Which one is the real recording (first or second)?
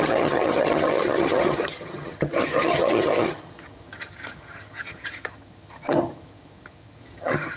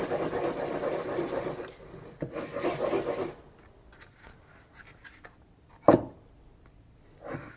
second